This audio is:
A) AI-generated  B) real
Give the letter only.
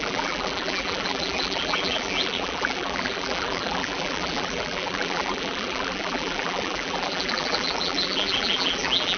A